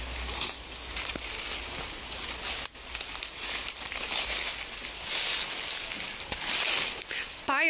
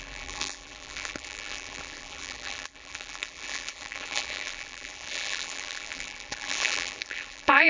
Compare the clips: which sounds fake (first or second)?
second